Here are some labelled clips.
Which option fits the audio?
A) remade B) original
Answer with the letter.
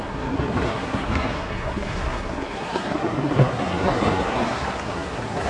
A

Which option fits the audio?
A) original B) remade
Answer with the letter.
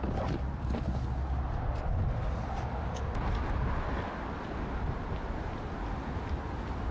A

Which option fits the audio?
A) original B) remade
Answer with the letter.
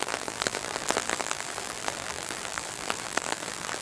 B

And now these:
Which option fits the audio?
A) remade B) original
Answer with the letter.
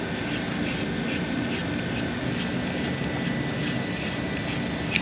B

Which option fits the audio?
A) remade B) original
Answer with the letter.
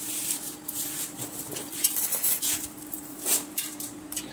A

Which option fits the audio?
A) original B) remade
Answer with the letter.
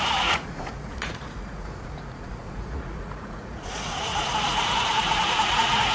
B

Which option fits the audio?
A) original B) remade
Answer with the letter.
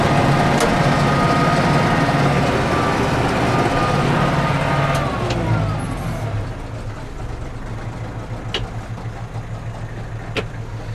A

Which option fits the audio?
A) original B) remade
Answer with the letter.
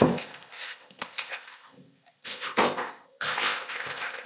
B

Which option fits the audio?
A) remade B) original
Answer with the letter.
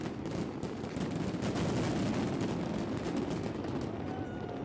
B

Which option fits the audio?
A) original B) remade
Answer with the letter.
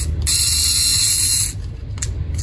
A